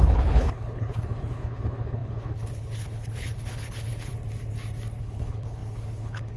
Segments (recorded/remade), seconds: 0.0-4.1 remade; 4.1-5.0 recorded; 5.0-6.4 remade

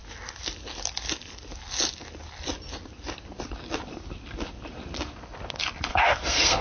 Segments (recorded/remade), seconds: 0.0-5.9 recorded; 5.9-6.6 remade

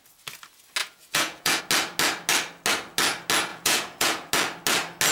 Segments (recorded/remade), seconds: 0.0-0.8 recorded; 0.8-1.6 remade; 1.6-3.5 recorded; 3.5-4.3 remade; 4.3-5.1 recorded

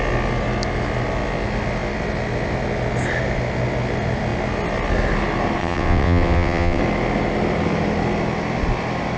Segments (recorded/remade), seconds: 0.0-5.6 recorded; 5.6-6.8 remade; 6.8-9.2 recorded

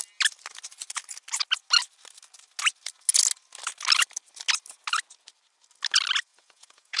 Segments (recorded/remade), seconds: 0.0-6.3 recorded; 6.3-7.0 remade

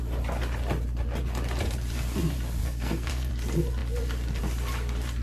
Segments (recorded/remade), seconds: 0.0-2.6 recorded; 2.6-3.3 remade; 3.3-5.2 recorded

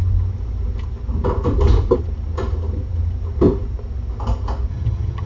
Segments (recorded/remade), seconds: 0.0-4.7 recorded; 4.7-5.3 remade